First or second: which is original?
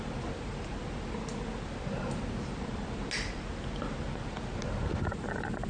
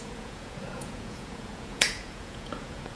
first